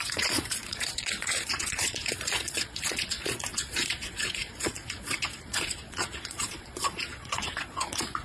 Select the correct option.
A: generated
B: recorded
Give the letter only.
A